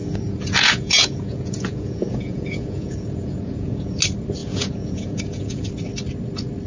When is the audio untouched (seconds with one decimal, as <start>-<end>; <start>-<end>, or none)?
4.0-4.4; 5.7-6.7